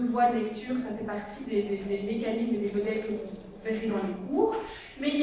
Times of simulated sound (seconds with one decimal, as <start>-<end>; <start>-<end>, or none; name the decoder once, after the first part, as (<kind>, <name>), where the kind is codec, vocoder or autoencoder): 3.6-4.8 (autoencoder, DAC-VAE)